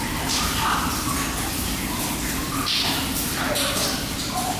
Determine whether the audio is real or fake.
real